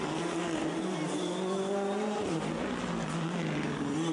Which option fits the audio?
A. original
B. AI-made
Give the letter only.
A